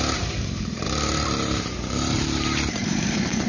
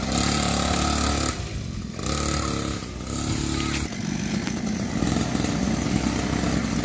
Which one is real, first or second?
second